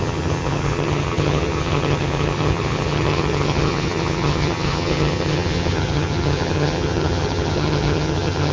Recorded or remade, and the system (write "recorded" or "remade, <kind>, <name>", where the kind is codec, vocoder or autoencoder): remade, vocoder, HiFi-GAN